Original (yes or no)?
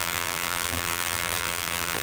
no